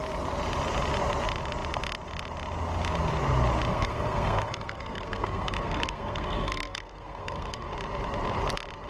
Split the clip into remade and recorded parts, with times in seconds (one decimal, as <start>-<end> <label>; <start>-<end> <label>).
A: 0.0-3.7 recorded; 3.7-7.7 remade; 7.7-8.9 recorded